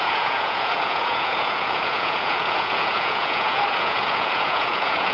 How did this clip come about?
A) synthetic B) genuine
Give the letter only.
A